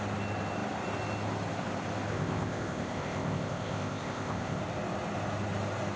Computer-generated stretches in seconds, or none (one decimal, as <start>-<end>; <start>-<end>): 2.1-4.6